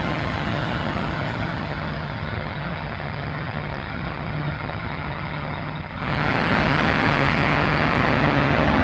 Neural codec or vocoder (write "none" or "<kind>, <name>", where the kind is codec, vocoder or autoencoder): vocoder, HiFi-GAN